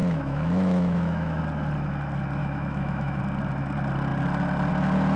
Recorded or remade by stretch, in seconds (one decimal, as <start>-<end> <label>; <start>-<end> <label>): 0.0-1.4 remade; 1.4-2.4 recorded; 2.4-3.2 remade; 3.2-5.2 recorded